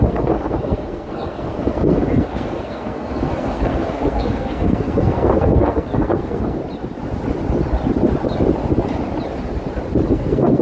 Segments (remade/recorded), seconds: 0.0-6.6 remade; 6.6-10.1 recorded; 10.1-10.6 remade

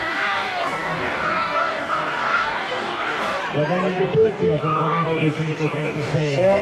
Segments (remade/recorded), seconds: 0.0-3.4 remade; 3.4-3.9 recorded; 3.9-6.6 remade

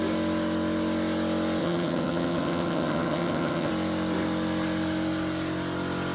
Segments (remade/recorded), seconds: 0.0-1.6 recorded; 1.6-3.7 remade; 3.7-6.1 recorded